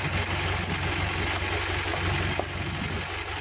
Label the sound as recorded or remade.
recorded